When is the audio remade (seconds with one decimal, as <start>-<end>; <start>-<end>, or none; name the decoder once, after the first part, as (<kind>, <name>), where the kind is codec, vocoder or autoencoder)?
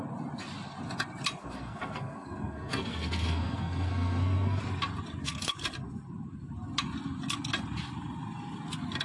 1.4-4.6 (codec, SNAC)